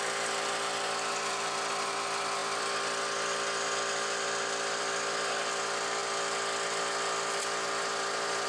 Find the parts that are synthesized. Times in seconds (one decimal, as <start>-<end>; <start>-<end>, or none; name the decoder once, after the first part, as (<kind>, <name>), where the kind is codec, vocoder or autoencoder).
0.0-6.0 (vocoder, BigVGAN v2); 7.4-8.5